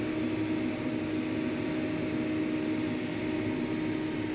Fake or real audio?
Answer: real